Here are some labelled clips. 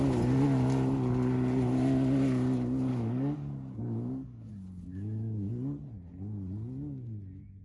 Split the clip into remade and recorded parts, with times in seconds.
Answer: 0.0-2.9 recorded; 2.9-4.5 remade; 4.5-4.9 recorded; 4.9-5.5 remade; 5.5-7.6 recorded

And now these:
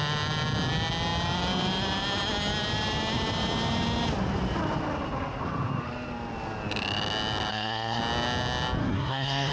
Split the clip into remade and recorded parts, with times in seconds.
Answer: 0.0-7.5 recorded; 7.5-8.0 remade; 8.0-8.8 recorded; 8.8-9.5 remade

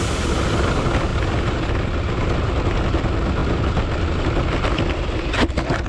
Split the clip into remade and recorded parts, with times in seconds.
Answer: 0.0-5.9 recorded

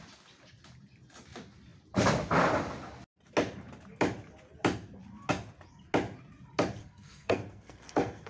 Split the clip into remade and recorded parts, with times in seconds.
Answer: 0.0-6.8 recorded; 6.8-8.3 remade

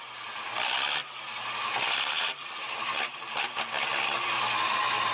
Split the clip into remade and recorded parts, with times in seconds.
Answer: 0.0-1.0 recorded; 1.0-3.6 remade; 3.6-5.1 recorded

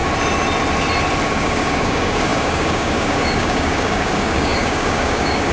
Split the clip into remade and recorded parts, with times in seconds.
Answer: 0.0-1.3 recorded; 1.3-5.5 remade